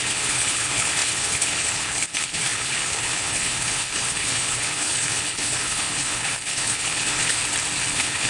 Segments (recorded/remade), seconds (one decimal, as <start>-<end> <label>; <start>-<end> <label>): 0.0-7.4 remade; 7.4-7.9 recorded; 7.9-8.3 remade